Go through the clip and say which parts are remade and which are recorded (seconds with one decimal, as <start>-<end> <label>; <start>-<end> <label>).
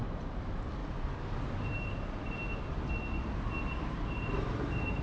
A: 0.0-0.8 remade; 0.8-3.7 recorded; 3.7-5.0 remade